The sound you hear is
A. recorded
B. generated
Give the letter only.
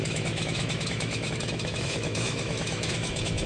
B